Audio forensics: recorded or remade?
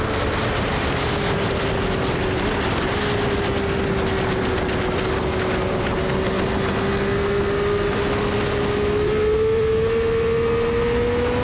recorded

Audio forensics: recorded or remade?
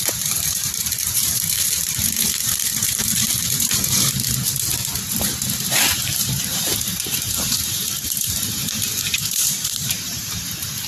remade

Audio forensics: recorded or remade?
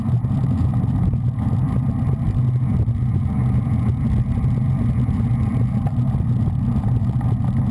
recorded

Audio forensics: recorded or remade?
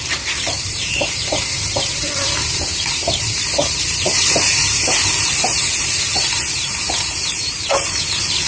remade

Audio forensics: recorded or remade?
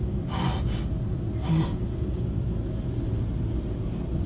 recorded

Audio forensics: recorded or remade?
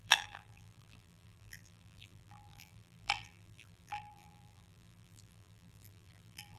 remade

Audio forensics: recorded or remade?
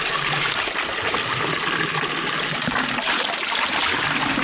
recorded